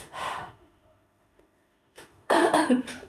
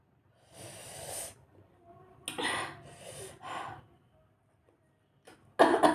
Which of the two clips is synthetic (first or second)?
first